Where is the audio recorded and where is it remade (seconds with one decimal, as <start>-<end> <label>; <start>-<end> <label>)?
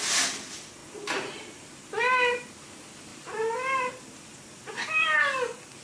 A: 0.0-0.8 recorded; 0.8-1.8 remade; 1.8-3.1 recorded; 3.1-4.9 remade; 4.9-5.8 recorded